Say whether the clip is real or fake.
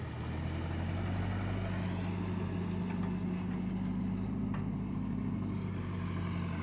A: real